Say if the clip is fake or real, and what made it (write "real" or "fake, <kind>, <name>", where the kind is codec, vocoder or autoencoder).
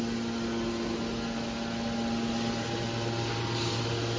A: real